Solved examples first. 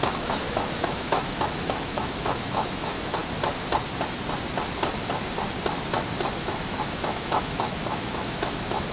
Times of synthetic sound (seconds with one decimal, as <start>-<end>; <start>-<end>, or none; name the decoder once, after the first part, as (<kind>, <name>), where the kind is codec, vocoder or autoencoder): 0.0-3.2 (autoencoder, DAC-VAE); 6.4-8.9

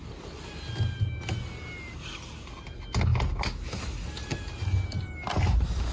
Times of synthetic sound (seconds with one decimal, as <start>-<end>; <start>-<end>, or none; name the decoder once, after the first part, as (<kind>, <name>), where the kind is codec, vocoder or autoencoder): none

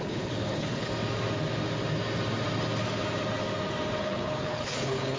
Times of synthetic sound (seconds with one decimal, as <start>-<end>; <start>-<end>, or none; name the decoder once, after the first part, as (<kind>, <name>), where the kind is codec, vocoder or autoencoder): 0.0-0.9 (codec, HILCodec); 4.0-5.2